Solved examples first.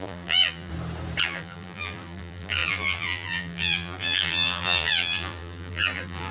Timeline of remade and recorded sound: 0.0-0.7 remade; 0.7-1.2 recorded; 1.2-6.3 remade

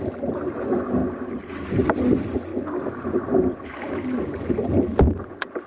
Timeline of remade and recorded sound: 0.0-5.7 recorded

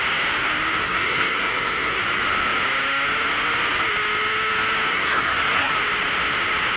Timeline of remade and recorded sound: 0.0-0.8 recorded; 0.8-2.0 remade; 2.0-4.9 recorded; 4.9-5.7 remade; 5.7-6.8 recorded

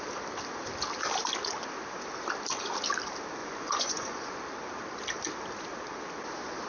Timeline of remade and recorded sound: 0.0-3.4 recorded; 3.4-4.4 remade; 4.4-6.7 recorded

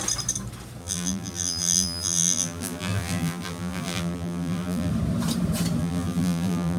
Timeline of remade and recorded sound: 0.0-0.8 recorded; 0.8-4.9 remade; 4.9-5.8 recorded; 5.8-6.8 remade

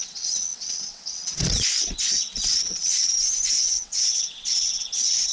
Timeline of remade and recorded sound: 0.0-3.1 remade; 3.1-3.6 recorded; 3.6-5.3 remade